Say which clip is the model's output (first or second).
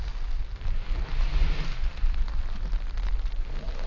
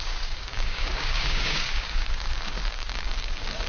second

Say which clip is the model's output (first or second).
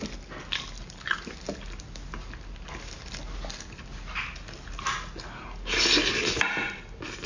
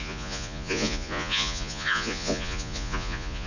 second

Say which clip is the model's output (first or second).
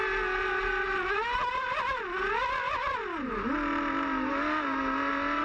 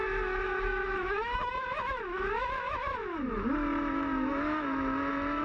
second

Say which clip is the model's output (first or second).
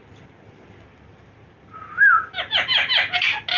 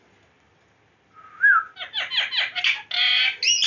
first